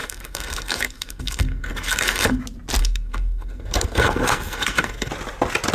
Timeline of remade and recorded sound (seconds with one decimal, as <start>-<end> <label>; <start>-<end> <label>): 0.0-2.4 remade; 2.4-2.8 recorded; 2.8-5.1 remade; 5.1-5.7 recorded